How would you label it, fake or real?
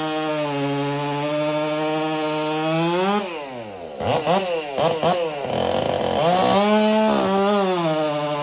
real